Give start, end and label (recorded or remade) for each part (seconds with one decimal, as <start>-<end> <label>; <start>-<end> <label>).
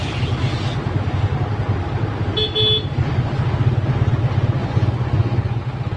0.0-4.6 recorded; 4.6-5.6 remade; 5.6-6.0 recorded